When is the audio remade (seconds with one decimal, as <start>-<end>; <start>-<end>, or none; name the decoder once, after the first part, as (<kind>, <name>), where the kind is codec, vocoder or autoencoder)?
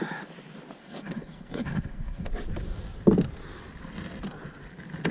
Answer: 0.8-2.3 (codec, SNAC)